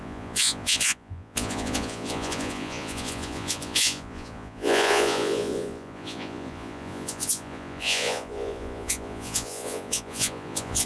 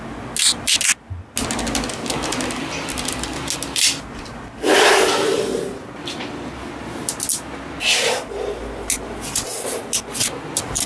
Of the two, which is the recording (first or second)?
second